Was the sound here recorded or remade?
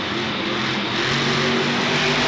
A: recorded